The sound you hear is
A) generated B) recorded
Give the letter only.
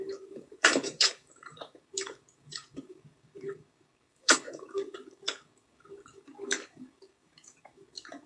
A